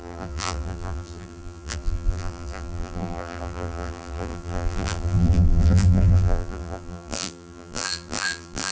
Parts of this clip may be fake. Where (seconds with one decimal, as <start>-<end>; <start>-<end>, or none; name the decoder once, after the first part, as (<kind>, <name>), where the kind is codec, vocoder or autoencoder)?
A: 0.0-8.7 (vocoder, BigVGAN v2)